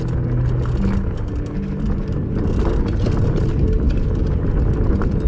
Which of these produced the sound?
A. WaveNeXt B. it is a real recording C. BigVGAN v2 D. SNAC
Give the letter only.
B